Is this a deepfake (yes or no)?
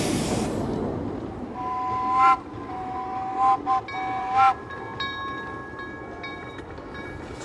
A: no